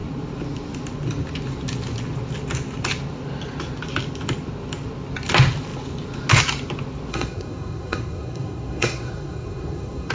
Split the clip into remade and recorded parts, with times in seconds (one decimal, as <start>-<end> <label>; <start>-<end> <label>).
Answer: 0.0-7.1 recorded; 7.1-10.1 remade